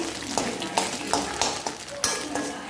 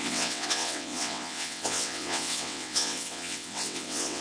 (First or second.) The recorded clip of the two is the first